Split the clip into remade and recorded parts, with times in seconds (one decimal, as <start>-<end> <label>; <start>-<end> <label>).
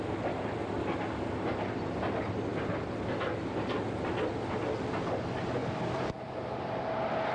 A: 0.0-5.6 recorded; 5.6-6.1 remade; 6.1-7.3 recorded